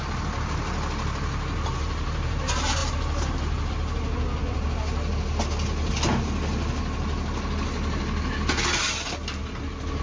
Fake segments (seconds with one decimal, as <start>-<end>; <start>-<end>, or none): none